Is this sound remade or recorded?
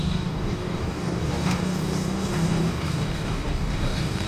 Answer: remade